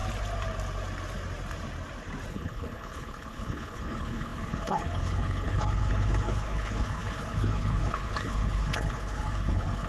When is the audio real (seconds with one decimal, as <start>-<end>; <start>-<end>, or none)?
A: 0.0-2.3